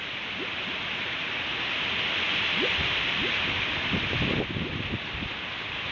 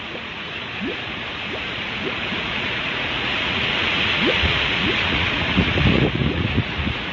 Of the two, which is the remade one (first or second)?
second